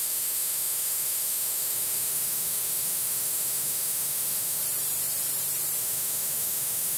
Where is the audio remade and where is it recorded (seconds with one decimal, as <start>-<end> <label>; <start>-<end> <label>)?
0.0-4.6 remade; 4.6-5.8 recorded; 5.8-7.0 remade